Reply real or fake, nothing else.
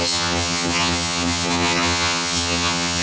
fake